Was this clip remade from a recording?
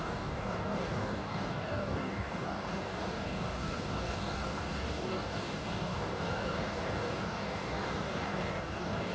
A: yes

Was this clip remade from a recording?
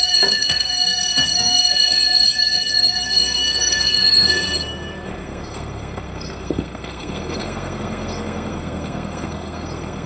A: yes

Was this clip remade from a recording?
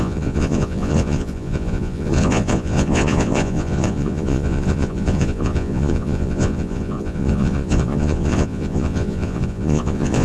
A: yes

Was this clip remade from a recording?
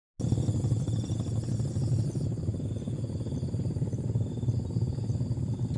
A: no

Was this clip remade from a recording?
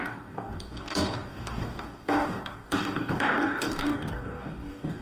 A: yes